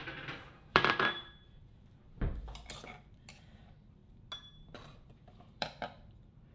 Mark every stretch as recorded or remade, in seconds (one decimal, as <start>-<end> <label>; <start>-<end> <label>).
0.0-4.0 remade; 4.0-4.6 recorded; 4.6-6.5 remade